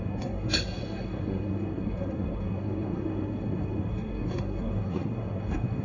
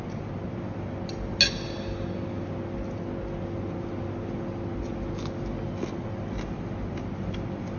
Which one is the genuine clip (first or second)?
second